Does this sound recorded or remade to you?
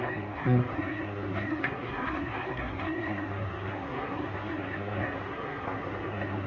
remade